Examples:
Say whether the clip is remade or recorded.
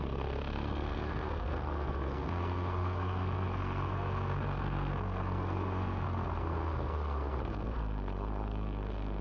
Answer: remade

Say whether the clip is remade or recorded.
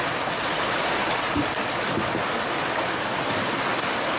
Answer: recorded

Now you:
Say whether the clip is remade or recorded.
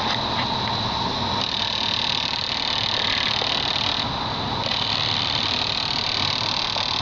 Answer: recorded